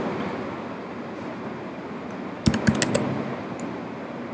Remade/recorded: recorded